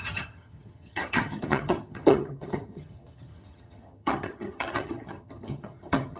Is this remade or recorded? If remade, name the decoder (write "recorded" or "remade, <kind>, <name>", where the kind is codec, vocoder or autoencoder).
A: remade, vocoder, HiFi-GAN